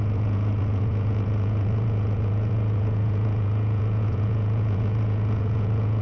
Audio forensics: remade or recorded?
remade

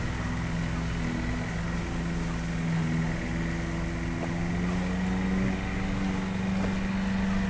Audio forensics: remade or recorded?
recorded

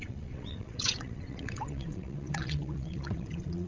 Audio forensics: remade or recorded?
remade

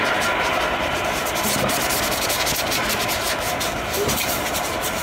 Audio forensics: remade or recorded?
recorded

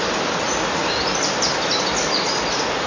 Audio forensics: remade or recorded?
recorded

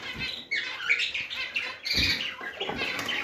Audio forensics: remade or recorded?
recorded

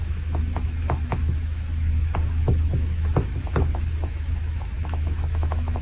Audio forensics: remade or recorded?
remade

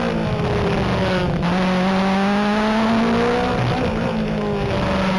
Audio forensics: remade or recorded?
recorded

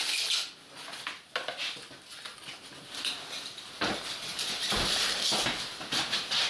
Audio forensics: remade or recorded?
recorded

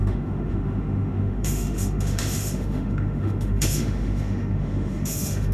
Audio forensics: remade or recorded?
remade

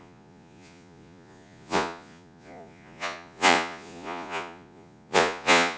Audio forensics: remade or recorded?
remade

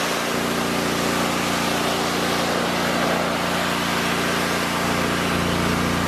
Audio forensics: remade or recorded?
recorded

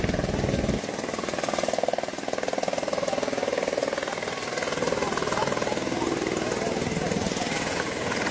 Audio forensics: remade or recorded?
recorded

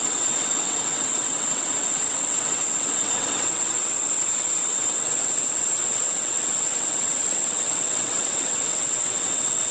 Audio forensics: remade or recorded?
remade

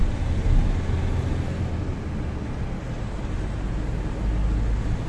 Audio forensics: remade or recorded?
recorded